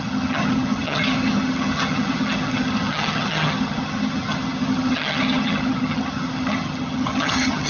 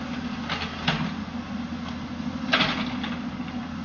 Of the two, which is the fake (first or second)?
first